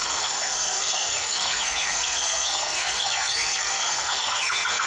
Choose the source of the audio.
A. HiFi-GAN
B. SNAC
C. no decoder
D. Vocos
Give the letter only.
B